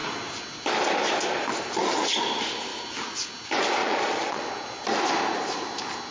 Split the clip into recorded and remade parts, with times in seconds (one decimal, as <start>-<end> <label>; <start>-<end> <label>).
0.0-3.8 recorded; 3.8-4.4 remade; 4.4-6.1 recorded